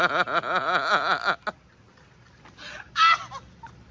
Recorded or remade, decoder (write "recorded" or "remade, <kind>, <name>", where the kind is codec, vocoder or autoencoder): recorded